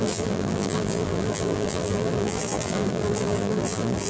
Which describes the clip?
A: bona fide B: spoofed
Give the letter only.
B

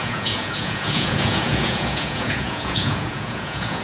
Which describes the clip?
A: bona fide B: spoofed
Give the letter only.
B